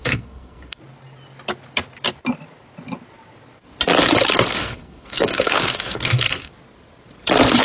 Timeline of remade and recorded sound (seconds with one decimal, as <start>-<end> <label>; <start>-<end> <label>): 0.0-0.8 remade; 0.8-4.6 recorded; 4.6-6.5 remade; 6.5-7.6 recorded

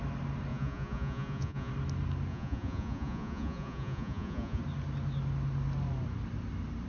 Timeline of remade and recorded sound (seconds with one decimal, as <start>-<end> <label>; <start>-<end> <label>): 0.0-0.5 recorded; 0.5-1.7 remade; 1.7-2.3 recorded; 2.3-4.6 remade; 4.6-6.9 recorded

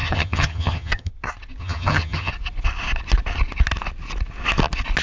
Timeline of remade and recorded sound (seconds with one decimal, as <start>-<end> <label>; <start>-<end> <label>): 0.0-1.1 remade; 1.1-1.6 recorded; 1.6-2.3 remade; 2.3-5.0 recorded

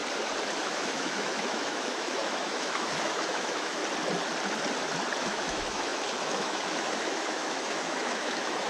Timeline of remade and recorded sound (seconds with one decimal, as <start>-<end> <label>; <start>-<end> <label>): 0.0-0.6 recorded; 0.6-3.8 remade; 3.8-5.2 recorded; 5.2-8.7 remade

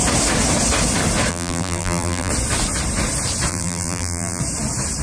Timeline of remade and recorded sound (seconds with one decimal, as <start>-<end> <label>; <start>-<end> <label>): 0.0-1.3 recorded; 1.3-2.3 remade; 2.3-3.5 recorded; 3.5-4.4 remade; 4.4-5.0 recorded

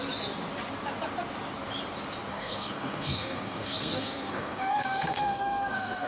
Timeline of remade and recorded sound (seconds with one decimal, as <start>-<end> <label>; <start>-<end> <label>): 0.0-2.3 recorded; 2.3-6.1 remade